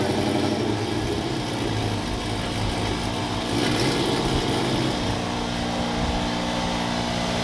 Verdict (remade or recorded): recorded